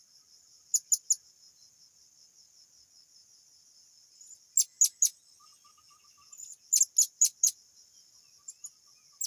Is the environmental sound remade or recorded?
recorded